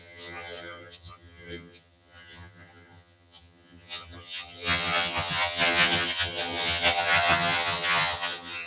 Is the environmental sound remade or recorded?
remade